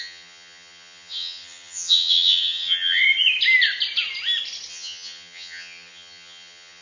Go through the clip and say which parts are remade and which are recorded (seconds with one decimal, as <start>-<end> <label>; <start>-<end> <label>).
0.0-3.0 remade; 3.0-4.7 recorded; 4.7-6.8 remade